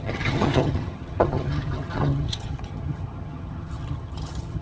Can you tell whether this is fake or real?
fake